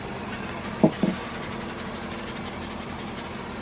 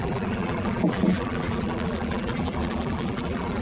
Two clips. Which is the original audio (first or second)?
first